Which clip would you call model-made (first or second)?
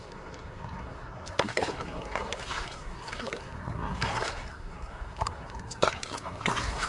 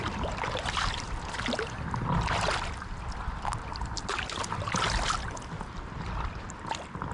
first